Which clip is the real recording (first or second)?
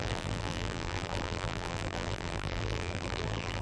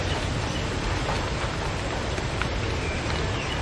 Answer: second